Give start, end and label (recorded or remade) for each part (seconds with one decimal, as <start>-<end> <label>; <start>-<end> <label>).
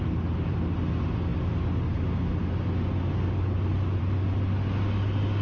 0.0-5.4 recorded